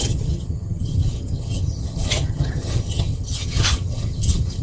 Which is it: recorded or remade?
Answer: remade